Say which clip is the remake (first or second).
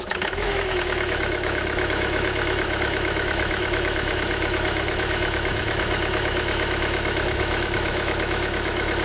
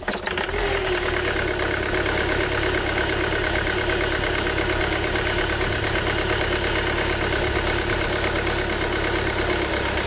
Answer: first